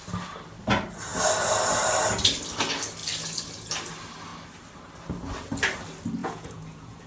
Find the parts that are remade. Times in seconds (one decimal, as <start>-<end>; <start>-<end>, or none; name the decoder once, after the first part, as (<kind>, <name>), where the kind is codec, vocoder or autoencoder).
6.2-7.1 (vocoder, Vocos)